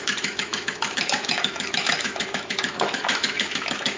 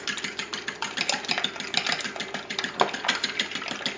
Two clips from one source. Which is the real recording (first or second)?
second